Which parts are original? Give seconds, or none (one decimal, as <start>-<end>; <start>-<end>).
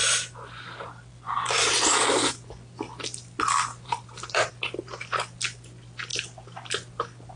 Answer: 0.0-3.7; 4.5-7.4